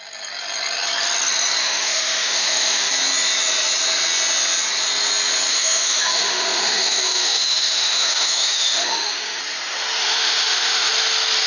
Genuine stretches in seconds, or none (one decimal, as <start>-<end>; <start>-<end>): 0.0-1.6; 2.9-5.5; 9.4-10.0; 10.9-11.5